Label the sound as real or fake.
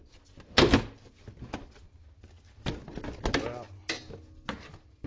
real